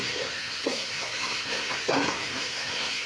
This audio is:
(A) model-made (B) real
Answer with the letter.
A